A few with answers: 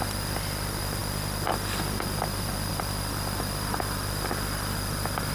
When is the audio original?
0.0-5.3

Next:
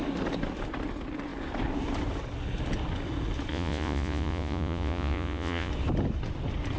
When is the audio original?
0.0-3.5; 5.7-6.8

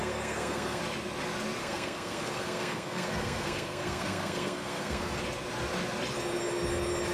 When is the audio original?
0.8-1.6; 5.2-7.1

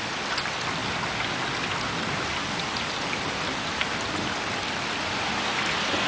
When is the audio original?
0.0-6.1

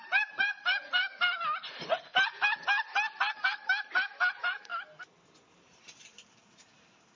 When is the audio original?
2.1-4.3; 4.7-5.3

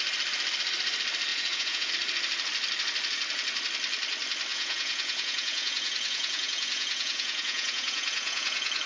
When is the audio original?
0.0-1.3; 1.9-4.5

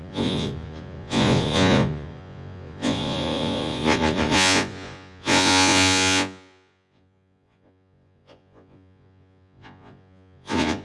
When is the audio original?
none

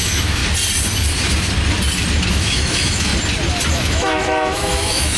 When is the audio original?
0.4-2.3; 3.1-3.7